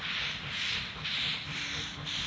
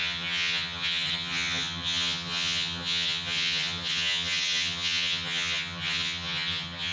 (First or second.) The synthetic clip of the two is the second